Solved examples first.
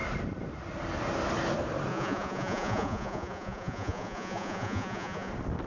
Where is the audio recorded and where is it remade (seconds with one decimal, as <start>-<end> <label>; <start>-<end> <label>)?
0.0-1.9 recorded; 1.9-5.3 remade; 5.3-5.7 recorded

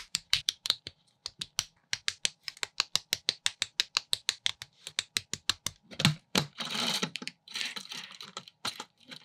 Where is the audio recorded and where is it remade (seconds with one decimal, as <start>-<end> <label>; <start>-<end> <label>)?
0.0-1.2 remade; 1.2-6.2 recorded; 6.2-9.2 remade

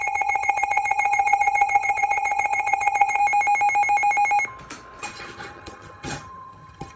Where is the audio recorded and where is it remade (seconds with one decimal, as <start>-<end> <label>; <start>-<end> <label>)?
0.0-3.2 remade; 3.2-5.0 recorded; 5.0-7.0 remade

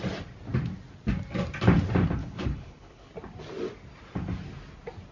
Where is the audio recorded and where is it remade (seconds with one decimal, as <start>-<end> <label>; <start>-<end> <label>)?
0.0-2.2 recorded; 2.2-3.1 remade; 3.1-5.1 recorded

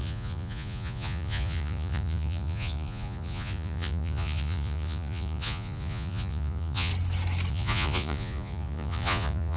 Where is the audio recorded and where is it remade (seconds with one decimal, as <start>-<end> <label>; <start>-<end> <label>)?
0.0-6.9 remade; 6.9-7.5 recorded; 7.5-9.6 remade

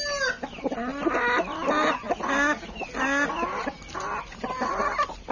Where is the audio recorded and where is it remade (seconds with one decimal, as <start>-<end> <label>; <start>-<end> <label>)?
0.0-5.3 recorded

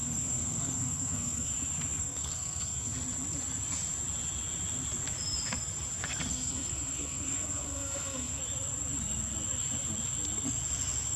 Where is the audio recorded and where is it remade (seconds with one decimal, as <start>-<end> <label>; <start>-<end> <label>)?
0.0-1.5 remade; 1.5-2.0 recorded; 2.0-2.9 remade; 2.9-6.3 recorded; 6.3-8.4 remade; 8.4-11.2 recorded